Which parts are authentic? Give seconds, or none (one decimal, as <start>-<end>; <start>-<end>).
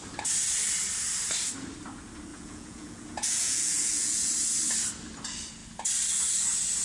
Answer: 0.0-2.3; 4.3-6.8